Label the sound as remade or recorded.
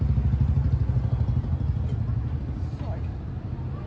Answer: recorded